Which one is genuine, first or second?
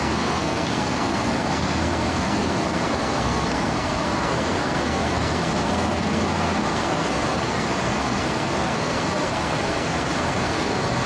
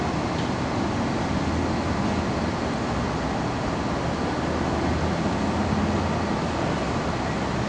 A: second